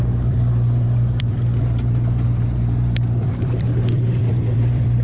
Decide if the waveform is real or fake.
fake